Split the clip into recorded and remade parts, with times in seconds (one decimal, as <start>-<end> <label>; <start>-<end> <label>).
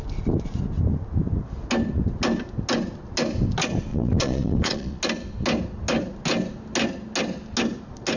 0.0-3.9 recorded; 3.9-5.0 remade; 5.0-8.2 recorded